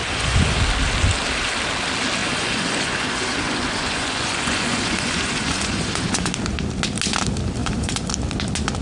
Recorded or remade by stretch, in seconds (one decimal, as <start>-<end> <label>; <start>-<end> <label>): 0.0-0.6 remade; 0.6-2.2 recorded; 2.2-6.3 remade; 6.3-7.6 recorded; 7.6-8.1 remade; 8.1-8.8 recorded